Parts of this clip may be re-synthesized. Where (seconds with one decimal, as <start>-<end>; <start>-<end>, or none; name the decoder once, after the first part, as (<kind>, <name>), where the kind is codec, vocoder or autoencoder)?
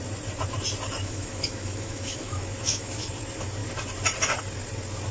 1.0-3.1 (autoencoder, DAC-VAE)